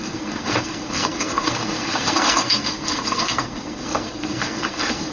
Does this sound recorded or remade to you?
remade